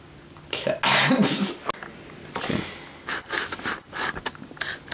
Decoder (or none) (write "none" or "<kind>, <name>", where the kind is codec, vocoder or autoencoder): none